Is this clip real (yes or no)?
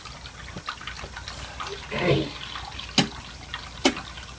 yes